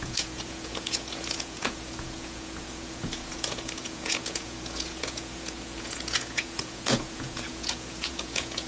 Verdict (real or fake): fake